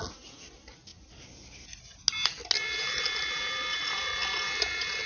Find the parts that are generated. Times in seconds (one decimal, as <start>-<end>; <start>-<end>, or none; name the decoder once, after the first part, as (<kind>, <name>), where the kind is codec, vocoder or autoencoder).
none